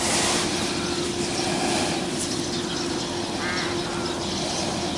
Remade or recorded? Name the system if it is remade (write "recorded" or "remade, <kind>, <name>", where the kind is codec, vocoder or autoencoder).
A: recorded